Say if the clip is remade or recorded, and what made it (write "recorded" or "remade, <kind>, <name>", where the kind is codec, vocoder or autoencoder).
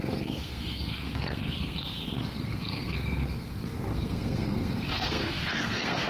remade, codec, SNAC